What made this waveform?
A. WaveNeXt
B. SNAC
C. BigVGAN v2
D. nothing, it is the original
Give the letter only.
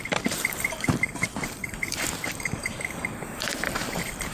C